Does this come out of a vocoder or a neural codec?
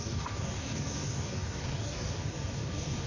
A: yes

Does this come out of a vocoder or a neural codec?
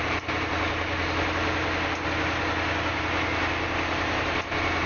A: no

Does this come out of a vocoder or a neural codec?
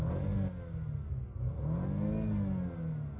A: no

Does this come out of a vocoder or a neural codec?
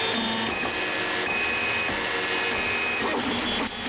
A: no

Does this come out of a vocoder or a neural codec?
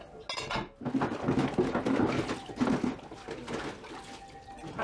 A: no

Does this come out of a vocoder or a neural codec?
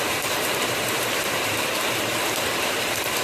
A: yes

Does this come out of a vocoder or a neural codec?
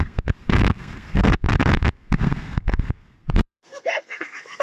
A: yes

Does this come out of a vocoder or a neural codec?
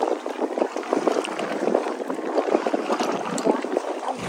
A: no